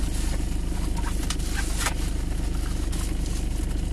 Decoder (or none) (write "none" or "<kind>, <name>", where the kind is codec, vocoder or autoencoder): none